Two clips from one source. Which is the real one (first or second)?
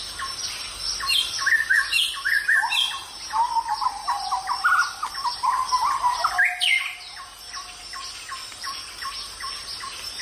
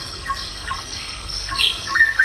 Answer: first